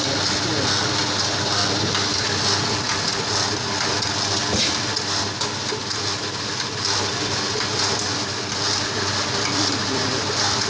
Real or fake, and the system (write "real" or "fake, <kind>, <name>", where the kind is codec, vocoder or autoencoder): real